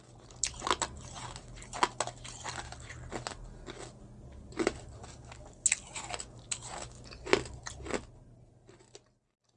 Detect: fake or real real